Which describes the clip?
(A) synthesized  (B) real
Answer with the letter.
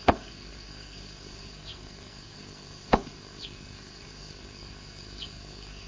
A